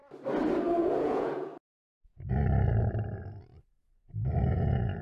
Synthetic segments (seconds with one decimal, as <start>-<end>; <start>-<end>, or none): 0.8-1.5; 4.5-5.0